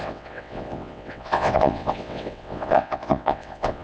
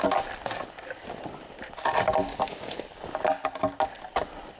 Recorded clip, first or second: second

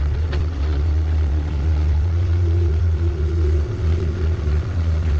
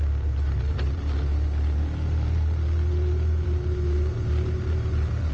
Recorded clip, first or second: second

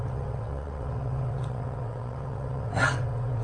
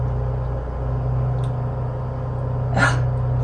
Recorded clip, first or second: second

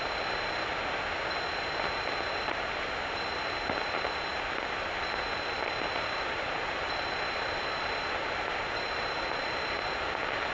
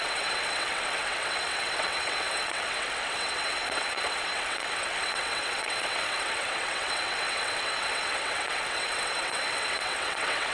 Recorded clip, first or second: first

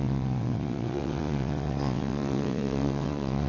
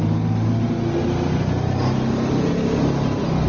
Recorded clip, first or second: second